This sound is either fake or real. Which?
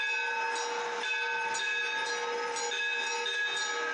real